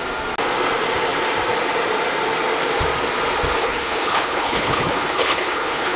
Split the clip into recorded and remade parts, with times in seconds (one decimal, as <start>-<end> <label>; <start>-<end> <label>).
0.0-3.6 recorded; 3.6-6.0 remade